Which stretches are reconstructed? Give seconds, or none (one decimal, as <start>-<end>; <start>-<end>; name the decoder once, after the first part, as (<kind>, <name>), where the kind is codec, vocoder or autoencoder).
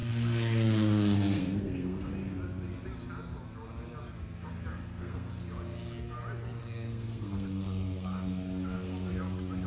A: 0.0-2.1 (codec, SNAC); 4.7-5.3; 6.6-9.1